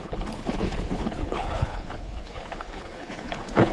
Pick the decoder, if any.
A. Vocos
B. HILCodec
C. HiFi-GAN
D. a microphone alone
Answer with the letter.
B